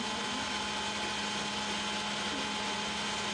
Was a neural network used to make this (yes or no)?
no